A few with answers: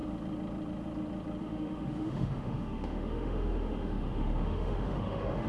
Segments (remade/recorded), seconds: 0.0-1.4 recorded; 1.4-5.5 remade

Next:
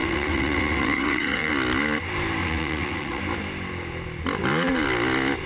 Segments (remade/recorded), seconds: 0.0-1.5 remade; 1.5-2.4 recorded; 2.4-3.2 remade; 3.2-5.5 recorded

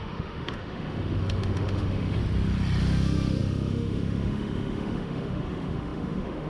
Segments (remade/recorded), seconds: 0.0-2.2 remade; 2.2-2.8 recorded; 2.8-6.5 remade

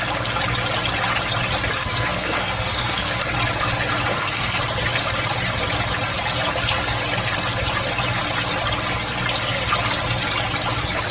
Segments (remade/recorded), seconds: 0.0-1.8 recorded; 1.8-3.2 remade; 3.2-4.1 recorded; 4.1-4.6 remade; 4.6-11.1 recorded